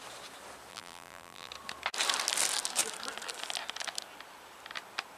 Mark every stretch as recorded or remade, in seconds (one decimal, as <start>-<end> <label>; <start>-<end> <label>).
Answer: 0.0-0.7 recorded; 0.7-1.5 remade; 1.5-5.2 recorded